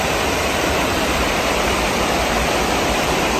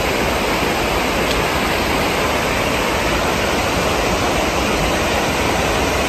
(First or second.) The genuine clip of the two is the second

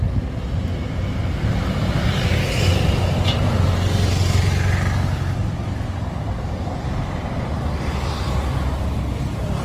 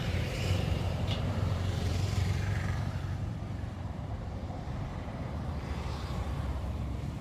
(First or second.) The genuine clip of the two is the first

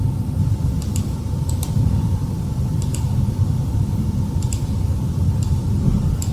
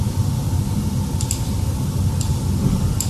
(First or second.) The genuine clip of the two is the second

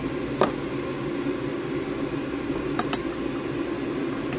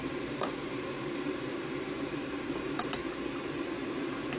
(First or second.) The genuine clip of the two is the first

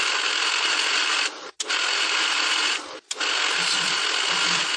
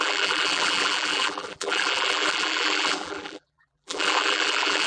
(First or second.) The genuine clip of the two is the first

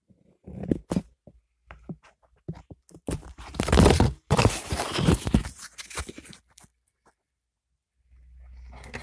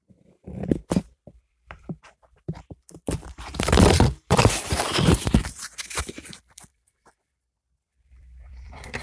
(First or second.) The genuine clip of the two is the first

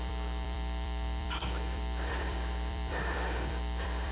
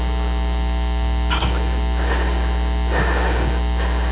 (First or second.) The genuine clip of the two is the second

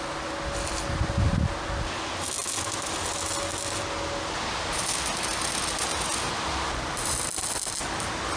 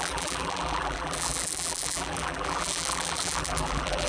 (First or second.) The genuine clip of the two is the first